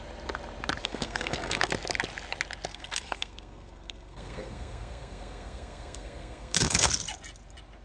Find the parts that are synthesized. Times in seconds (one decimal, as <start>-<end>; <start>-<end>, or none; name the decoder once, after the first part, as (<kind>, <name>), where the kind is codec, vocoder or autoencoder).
0.8-1.7 (codec, SNAC); 2.7-6.9